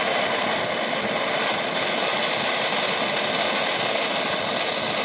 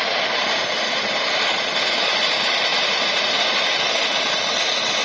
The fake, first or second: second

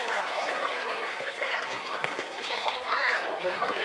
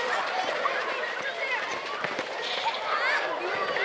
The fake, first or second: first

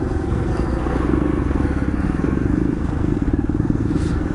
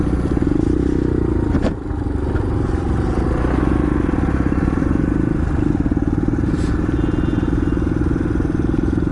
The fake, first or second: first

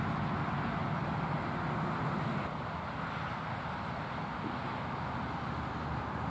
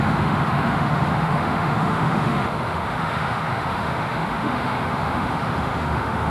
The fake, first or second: second